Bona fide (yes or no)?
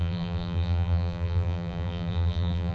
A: no